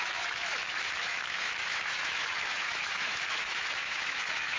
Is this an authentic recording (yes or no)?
no